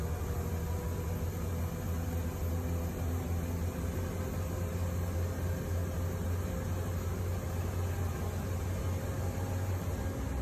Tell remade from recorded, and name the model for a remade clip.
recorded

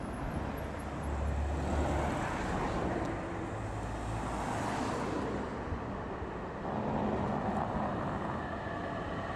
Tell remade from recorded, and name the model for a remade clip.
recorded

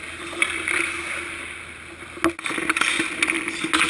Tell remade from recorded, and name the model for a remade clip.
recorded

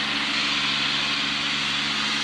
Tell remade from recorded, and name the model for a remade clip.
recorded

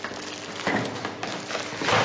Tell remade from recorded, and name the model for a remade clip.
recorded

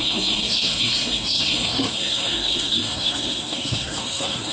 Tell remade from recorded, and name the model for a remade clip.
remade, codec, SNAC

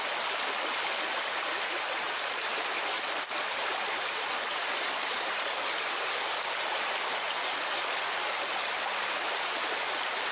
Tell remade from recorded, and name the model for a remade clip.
recorded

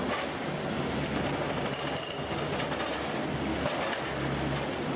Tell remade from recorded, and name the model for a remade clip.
recorded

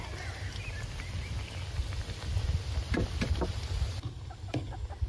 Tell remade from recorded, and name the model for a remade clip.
recorded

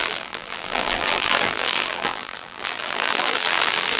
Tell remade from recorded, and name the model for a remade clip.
remade, vocoder, BigVGAN v2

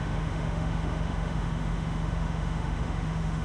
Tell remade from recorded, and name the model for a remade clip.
remade, autoencoder, DAC-VAE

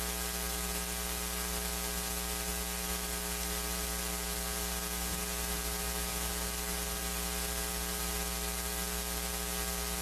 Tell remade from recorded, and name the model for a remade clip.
recorded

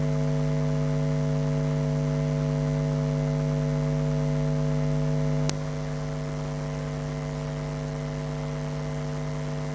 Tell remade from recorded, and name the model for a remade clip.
recorded